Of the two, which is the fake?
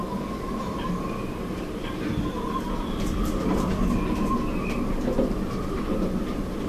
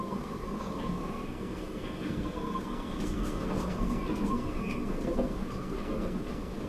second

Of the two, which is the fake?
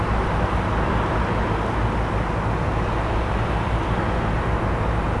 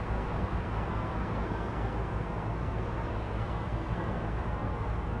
second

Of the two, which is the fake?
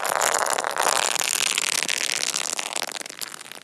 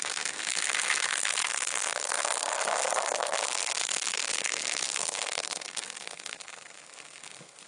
second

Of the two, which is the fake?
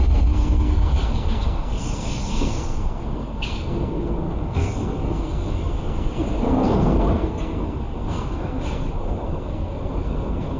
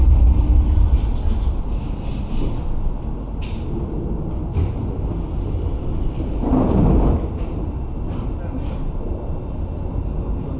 first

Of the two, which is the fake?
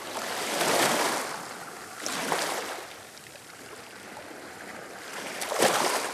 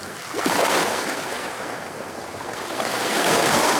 second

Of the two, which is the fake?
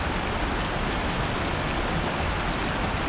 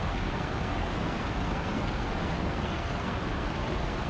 second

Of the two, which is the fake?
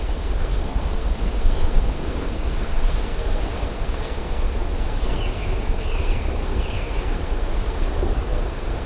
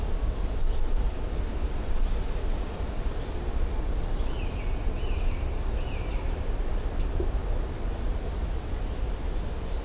first